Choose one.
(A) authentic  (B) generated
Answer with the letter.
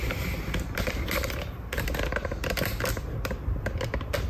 A